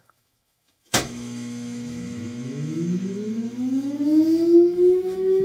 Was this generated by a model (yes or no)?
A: yes